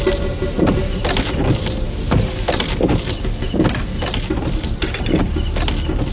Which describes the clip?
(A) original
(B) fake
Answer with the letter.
A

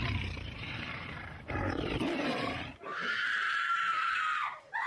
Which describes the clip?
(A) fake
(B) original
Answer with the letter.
A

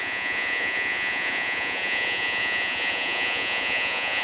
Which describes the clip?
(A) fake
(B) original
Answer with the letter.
A